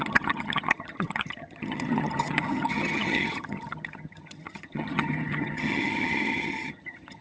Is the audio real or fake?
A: fake